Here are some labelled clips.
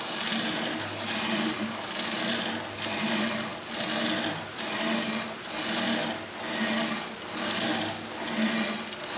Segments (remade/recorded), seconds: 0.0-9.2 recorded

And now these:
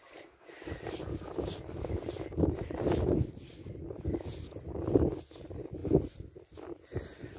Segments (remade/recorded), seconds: 0.0-7.4 recorded

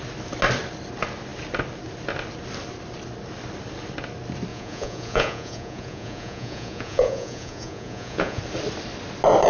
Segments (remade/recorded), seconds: 0.0-4.5 recorded; 4.5-8.4 remade; 8.4-9.5 recorded

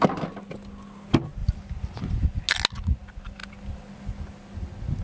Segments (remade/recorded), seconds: 0.0-1.4 recorded; 1.4-2.4 remade; 2.4-5.0 recorded

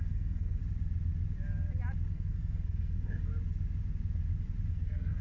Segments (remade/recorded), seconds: 0.0-0.6 remade; 0.6-2.1 recorded; 2.1-3.3 remade; 3.3-4.7 recorded; 4.7-5.2 remade